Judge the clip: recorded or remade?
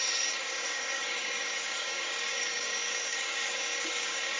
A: remade